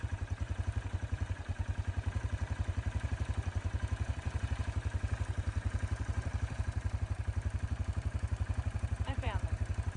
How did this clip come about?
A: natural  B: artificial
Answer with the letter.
B